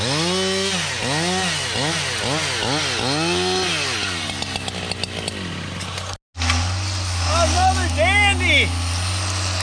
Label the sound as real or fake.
real